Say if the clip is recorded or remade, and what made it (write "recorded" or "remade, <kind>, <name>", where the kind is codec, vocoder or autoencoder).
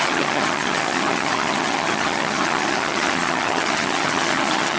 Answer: remade, vocoder, HiFi-GAN